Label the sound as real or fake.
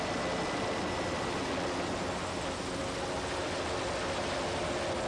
real